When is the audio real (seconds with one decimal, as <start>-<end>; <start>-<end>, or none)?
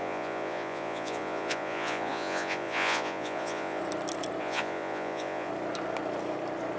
3.8-4.4; 5.5-6.8